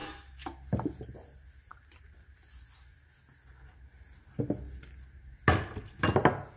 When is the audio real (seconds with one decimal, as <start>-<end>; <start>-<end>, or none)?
0.0-6.6